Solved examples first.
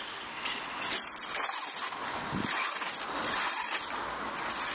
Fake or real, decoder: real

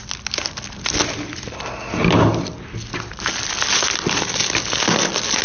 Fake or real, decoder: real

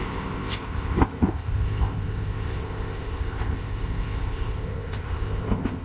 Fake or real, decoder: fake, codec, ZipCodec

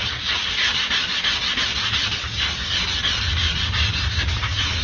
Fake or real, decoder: real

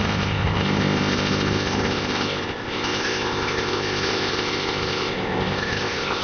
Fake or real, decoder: fake, codec, ZipCodec